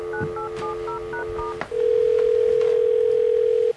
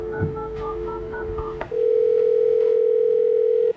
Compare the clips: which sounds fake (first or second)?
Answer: second